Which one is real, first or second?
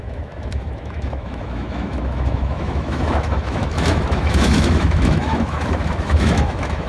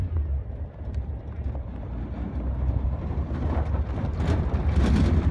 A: second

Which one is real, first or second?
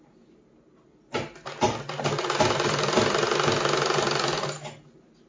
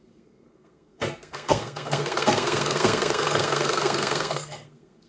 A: first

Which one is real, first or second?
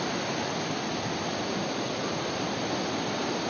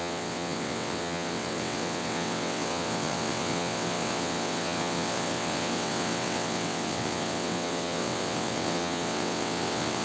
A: first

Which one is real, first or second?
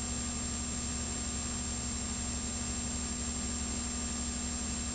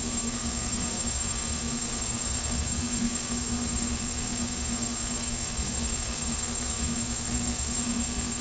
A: first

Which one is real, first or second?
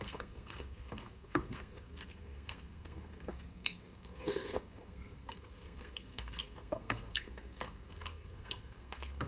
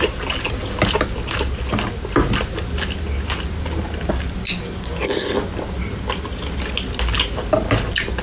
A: second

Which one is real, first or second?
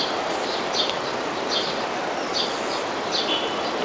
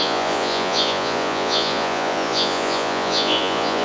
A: first